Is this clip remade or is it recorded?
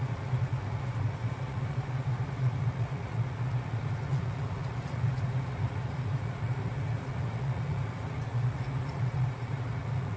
remade